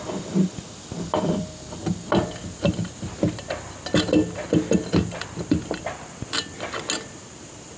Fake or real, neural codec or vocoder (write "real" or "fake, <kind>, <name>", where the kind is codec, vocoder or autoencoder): real